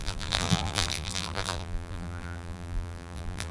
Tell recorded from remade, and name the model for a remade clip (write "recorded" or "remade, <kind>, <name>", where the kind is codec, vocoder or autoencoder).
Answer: remade, vocoder, BigVGAN v2